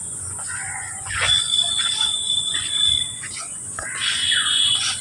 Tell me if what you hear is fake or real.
fake